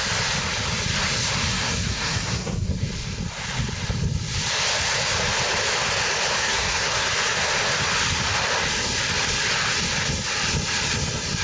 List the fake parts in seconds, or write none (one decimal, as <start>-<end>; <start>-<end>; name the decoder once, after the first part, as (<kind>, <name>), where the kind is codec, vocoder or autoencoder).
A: 1.5-2.7 (codec, SNAC); 6.4-7.1